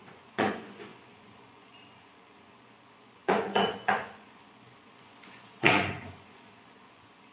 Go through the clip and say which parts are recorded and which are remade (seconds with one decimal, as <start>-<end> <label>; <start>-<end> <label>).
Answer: 0.0-7.3 remade